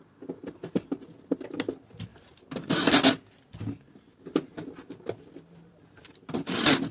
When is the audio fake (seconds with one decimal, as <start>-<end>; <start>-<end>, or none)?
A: none